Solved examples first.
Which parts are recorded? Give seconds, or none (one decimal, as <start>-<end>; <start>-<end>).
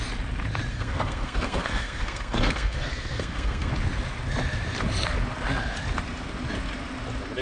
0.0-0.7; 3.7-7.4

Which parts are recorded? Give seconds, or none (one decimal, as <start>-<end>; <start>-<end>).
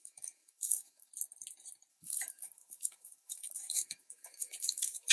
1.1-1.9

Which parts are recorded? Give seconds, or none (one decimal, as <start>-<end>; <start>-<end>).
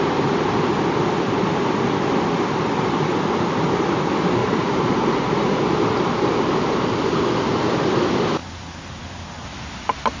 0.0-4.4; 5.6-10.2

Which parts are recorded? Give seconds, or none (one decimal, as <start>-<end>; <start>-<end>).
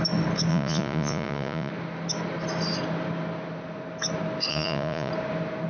0.0-0.5; 1.7-4.5; 5.1-5.7